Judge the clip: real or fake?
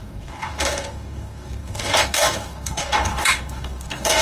fake